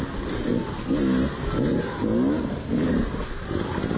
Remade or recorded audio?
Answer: recorded